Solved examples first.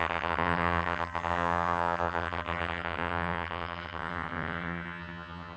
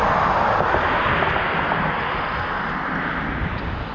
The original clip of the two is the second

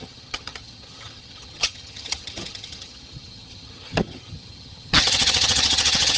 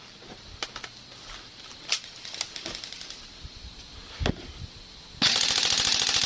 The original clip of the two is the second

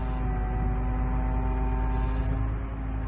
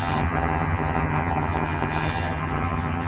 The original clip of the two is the first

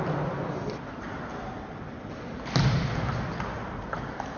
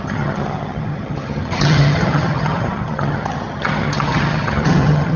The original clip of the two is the first